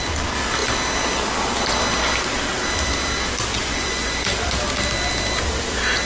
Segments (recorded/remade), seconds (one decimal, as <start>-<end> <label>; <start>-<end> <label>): 0.0-3.5 recorded; 3.5-4.2 remade; 4.2-6.0 recorded